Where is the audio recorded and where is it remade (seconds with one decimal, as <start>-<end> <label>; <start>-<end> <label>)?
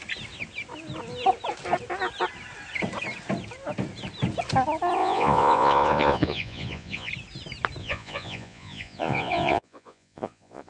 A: 0.0-5.0 recorded; 5.0-7.1 remade; 7.1-7.8 recorded; 7.8-10.7 remade